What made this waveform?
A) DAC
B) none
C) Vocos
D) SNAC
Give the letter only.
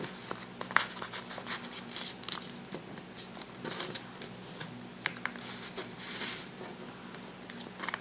B